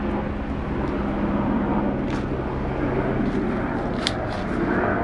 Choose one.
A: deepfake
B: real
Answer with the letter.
B